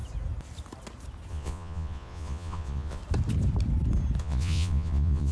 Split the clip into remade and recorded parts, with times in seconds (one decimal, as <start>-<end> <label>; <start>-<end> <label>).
0.0-1.3 recorded; 1.3-3.0 remade; 3.0-4.2 recorded; 4.2-5.3 remade